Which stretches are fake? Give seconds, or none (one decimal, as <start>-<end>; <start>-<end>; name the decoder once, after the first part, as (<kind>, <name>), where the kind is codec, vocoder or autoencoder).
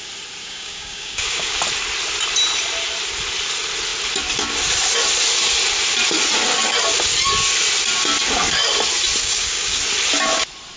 0.4-1.6 (codec, DAC); 9.2-9.8